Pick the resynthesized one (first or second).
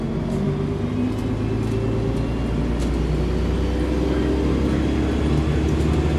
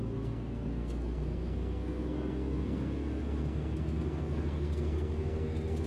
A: second